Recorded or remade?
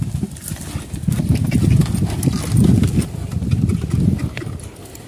recorded